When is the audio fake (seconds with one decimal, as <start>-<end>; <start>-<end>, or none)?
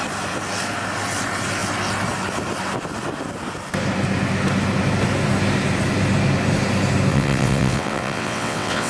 7.1-8.9